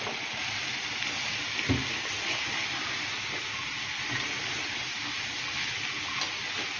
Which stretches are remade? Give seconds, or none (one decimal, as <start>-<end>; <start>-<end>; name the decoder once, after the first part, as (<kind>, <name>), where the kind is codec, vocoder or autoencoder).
none